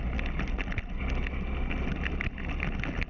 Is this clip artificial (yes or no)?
no